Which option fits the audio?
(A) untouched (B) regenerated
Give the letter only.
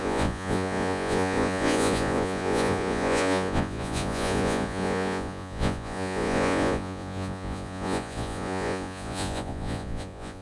B